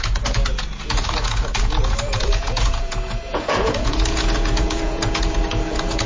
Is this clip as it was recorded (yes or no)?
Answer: no